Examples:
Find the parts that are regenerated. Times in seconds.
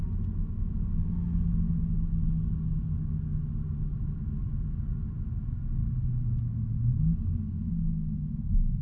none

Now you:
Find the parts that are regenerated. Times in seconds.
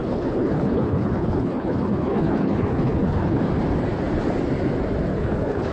0.0-3.4 (codec, HILCodec); 5.1-5.7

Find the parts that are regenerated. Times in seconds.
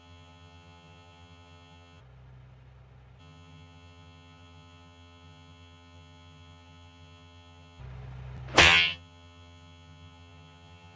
0.0-2.0 (vocoder, HiFi-GAN); 3.2-7.8; 8.6-11.0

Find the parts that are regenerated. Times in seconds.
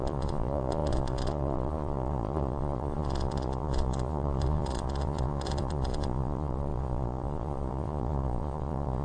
0.0-9.0 (vocoder, Vocos)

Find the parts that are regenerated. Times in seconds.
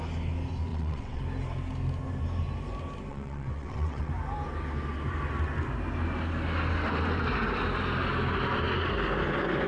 0.7-1.2 (vocoder, WaveNeXt); 3.1-4.1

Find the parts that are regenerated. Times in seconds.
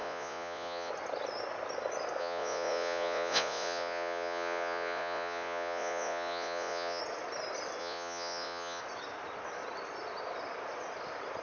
0.0-0.9 (vocoder, Vocos); 2.2-7.0; 7.8-8.8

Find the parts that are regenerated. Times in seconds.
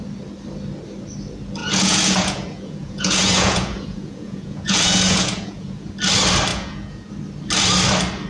1.6-5.9 (vocoder, Vocos); 6.5-7.1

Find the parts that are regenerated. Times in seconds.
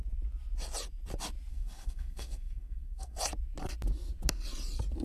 1.5-3.2 (codec, SNAC)